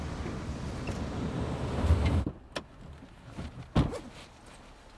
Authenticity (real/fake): real